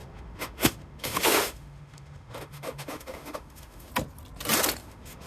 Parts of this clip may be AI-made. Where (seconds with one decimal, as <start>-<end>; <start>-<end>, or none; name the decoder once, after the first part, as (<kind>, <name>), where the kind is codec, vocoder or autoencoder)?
0.0-3.9 (autoencoder, DAC-VAE); 4.8-5.3